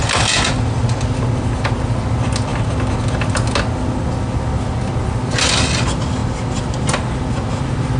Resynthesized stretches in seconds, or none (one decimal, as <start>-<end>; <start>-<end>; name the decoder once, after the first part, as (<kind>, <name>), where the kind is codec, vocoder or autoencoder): none